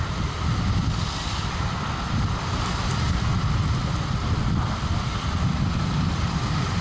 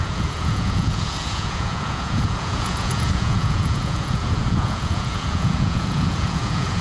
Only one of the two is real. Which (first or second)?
first